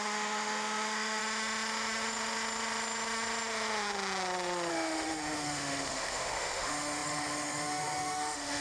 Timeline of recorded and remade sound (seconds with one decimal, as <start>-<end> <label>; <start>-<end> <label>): 0.0-1.2 remade; 1.2-4.7 recorded; 4.7-8.6 remade